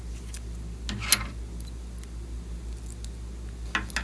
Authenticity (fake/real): real